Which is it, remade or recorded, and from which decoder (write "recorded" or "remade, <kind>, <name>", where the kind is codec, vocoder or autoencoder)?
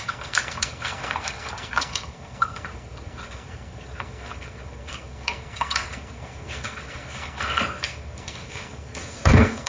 remade, codec, SNAC